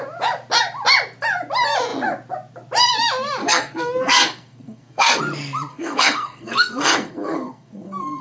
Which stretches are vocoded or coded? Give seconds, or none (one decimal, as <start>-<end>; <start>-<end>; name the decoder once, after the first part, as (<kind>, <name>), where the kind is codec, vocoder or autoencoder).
3.4-5.2 (codec, SNAC); 5.7-8.2

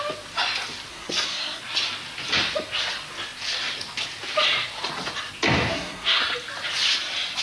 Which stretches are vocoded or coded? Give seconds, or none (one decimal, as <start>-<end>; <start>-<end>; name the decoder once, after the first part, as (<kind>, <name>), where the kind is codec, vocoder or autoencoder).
0.9-1.6 (codec, SNAC); 5.7-6.2

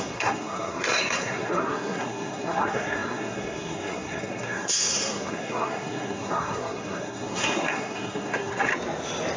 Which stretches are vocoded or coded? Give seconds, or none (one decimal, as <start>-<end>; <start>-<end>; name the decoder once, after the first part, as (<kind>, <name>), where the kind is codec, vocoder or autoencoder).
0.0-8.7 (codec, SNAC)